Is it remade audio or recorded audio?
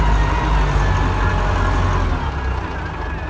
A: recorded